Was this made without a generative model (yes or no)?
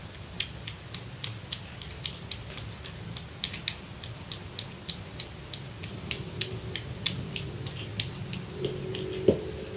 yes